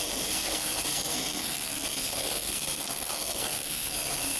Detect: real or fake fake